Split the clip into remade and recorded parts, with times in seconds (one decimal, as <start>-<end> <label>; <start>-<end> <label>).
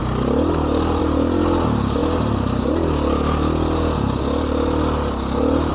0.0-5.7 recorded